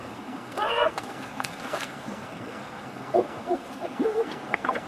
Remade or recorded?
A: remade